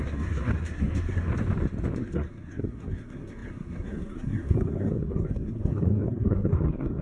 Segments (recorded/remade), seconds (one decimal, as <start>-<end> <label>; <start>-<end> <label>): 0.0-1.3 remade; 1.3-2.0 recorded; 2.0-7.0 remade